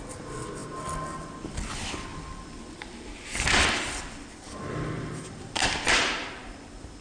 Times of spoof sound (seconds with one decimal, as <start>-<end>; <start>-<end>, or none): 2.1-6.3